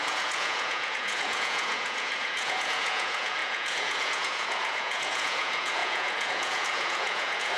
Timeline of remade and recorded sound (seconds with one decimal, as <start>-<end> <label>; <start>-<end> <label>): 0.0-7.6 remade